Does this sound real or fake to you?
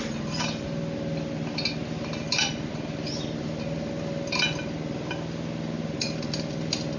real